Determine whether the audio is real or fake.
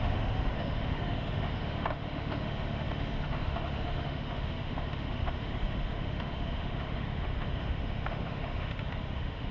fake